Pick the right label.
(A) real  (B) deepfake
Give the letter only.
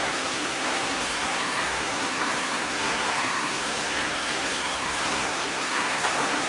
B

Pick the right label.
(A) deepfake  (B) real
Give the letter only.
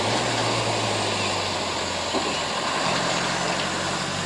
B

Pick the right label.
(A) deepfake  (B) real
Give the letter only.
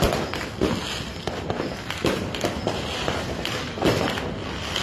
B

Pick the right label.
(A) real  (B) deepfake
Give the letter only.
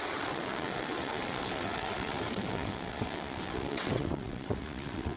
B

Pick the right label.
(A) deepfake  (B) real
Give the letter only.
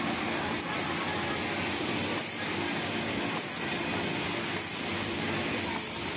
B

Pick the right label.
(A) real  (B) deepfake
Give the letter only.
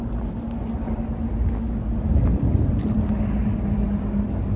A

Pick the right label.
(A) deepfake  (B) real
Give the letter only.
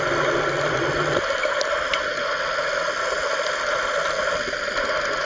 B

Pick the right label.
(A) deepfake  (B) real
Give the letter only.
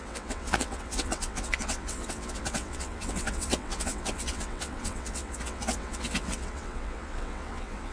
A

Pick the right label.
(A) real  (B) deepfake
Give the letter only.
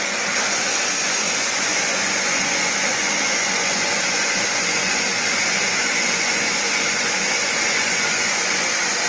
B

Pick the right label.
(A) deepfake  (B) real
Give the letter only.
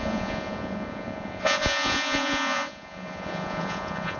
A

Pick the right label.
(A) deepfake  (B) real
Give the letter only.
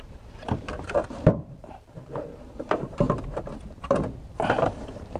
A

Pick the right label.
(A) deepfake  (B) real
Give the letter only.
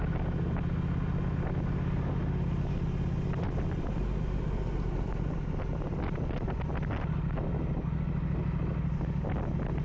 B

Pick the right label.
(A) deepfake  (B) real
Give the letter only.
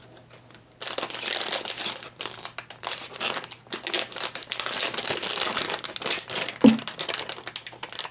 B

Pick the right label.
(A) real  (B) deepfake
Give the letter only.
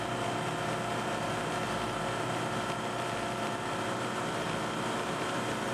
A